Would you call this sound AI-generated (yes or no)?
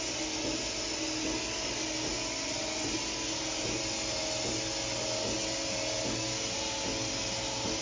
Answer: no